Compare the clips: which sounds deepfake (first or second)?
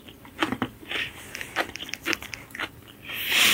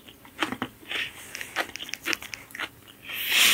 first